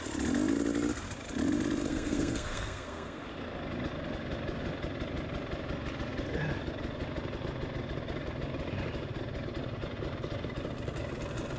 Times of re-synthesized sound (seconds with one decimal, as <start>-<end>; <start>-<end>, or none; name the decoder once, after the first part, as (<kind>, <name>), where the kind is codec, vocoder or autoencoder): 1.9-3.3 (codec, SNAC)